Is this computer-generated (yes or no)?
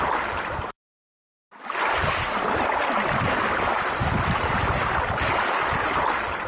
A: no